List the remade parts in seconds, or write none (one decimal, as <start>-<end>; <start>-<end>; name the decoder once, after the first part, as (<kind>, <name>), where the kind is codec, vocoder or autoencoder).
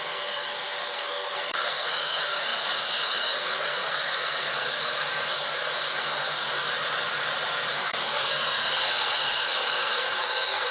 0.0-6.7 (codec, SNAC); 7.7-10.7